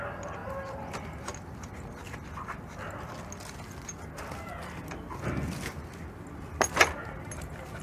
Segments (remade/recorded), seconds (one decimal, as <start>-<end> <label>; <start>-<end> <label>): 0.0-7.8 recorded